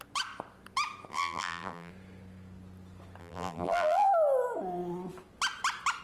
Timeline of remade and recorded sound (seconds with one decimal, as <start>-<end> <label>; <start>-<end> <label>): 0.0-1.1 recorded; 1.1-1.9 remade; 1.9-3.2 recorded; 3.2-4.1 remade; 4.1-6.0 recorded